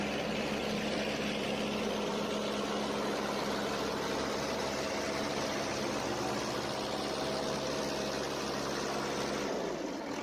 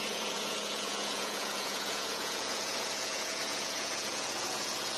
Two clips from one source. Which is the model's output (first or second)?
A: second